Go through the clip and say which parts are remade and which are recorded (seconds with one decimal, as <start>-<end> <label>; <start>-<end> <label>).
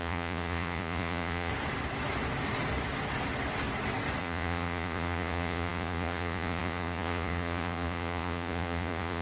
0.0-1.5 remade; 1.5-4.2 recorded; 4.2-9.2 remade